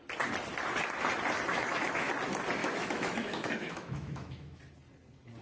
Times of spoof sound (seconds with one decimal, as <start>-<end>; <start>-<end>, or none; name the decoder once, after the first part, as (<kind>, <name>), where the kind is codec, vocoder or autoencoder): 1.5-2.1 (autoencoder, DAC-VAE); 2.6-4.6